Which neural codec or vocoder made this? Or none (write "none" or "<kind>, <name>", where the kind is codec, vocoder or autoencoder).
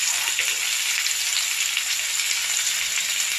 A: none